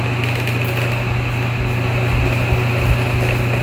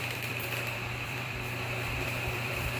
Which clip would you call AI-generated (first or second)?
second